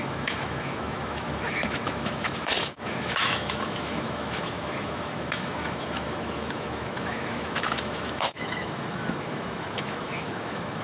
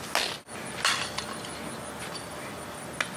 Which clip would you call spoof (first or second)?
first